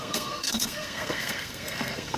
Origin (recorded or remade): remade